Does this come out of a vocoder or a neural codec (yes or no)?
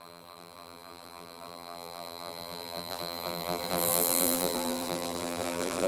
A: yes